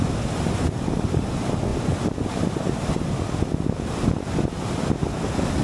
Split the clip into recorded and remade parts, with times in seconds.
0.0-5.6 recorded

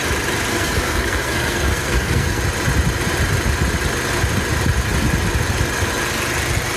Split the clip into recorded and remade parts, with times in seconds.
0.0-0.5 recorded; 0.5-2.4 remade; 2.4-6.8 recorded

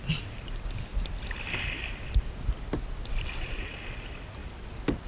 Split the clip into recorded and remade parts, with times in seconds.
0.0-3.1 recorded; 3.1-4.4 remade; 4.4-5.1 recorded

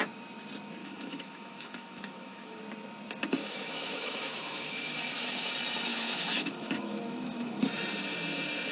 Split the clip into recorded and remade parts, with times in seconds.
0.0-0.8 recorded; 0.8-2.6 remade; 2.6-3.4 recorded; 3.4-5.5 remade; 5.5-5.9 recorded; 5.9-7.6 remade; 7.6-8.7 recorded